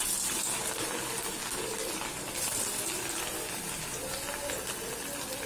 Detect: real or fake real